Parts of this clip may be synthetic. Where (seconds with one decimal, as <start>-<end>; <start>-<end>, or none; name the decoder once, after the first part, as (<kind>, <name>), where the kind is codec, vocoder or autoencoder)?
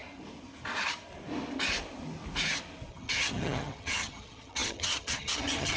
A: 2.9-5.8 (vocoder, HiFi-GAN)